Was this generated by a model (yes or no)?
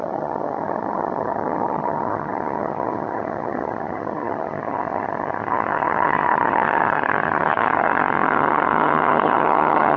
yes